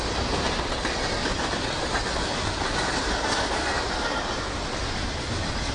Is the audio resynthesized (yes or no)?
no